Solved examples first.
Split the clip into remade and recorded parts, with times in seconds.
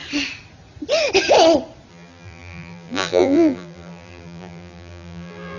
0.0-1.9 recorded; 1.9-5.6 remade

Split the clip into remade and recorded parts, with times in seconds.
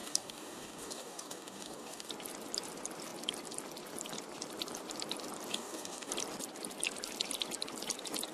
0.0-2.1 remade; 2.1-5.5 recorded; 5.5-6.1 remade; 6.1-8.3 recorded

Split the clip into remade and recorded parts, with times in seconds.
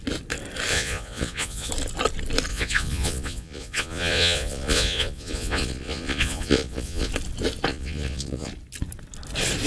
0.0-0.7 recorded; 0.7-1.7 remade; 1.7-2.5 recorded; 2.5-7.1 remade; 7.1-7.7 recorded; 7.7-8.5 remade; 8.5-9.7 recorded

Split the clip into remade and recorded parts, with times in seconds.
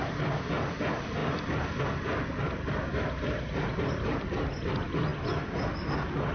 0.0-5.1 remade; 5.1-6.3 recorded